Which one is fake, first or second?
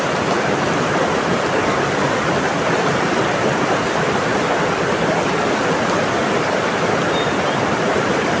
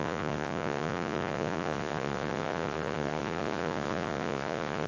second